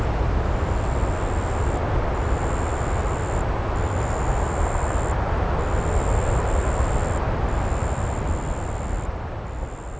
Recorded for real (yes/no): yes